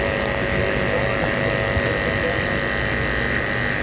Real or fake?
real